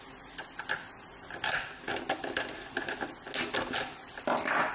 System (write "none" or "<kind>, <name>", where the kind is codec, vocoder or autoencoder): none